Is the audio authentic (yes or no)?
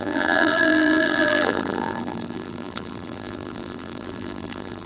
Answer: no